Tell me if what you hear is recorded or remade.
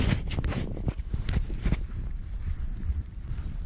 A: recorded